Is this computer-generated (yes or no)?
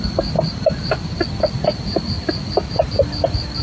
no